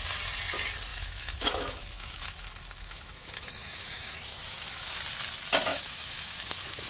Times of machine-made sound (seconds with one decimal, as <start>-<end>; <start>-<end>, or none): 0.9-5.0; 5.7-6.9